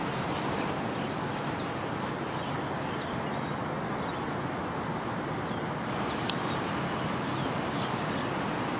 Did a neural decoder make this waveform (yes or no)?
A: no